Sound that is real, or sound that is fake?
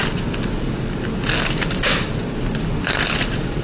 real